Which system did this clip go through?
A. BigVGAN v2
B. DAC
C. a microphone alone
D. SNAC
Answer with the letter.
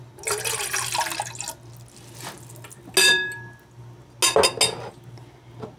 C